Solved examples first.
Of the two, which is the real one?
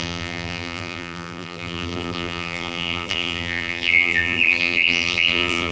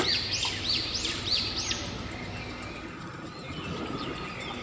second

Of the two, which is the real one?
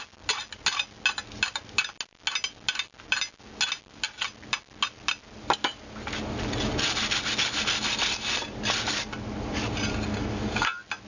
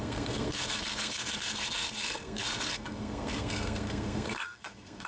first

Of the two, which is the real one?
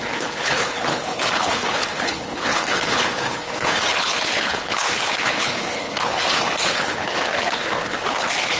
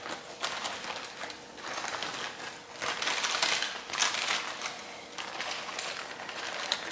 second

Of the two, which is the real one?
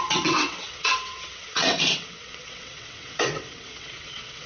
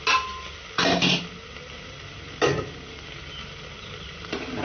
second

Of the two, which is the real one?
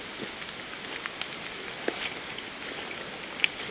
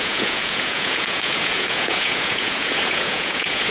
first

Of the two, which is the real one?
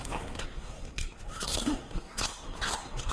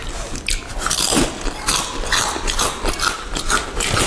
second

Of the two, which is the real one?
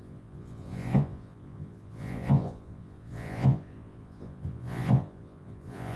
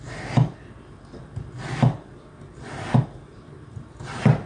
second